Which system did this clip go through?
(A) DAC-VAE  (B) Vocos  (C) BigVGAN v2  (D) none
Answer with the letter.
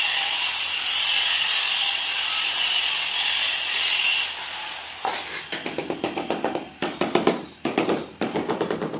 D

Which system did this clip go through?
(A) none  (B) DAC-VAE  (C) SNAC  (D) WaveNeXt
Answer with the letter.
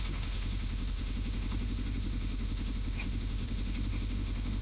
B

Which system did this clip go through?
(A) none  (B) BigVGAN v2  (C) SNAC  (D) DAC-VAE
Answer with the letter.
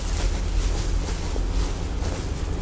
A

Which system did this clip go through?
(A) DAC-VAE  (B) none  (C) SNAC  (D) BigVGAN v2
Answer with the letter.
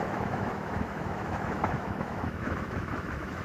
A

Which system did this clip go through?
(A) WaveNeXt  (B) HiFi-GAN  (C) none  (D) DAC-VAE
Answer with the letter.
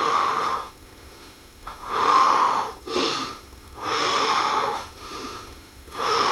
D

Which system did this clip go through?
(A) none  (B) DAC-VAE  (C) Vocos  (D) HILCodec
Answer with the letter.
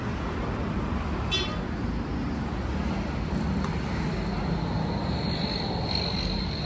A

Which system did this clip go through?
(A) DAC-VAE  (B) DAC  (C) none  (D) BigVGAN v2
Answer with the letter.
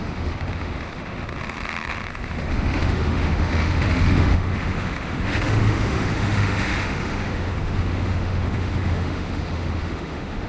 A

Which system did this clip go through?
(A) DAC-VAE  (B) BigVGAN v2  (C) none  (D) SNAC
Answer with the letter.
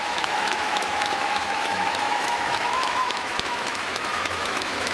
A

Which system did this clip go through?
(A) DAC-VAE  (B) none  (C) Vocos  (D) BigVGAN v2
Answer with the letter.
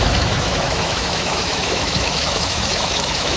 A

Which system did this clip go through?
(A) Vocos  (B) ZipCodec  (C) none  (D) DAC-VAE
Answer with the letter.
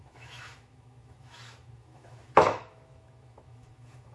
D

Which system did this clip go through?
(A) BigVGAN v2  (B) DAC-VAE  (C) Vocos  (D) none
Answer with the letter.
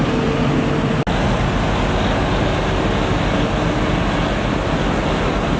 D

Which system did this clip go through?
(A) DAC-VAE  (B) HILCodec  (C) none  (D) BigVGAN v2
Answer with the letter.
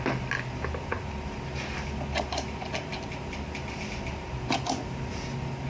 C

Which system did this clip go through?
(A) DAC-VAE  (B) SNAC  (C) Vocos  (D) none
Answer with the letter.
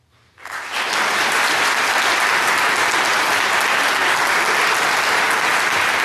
D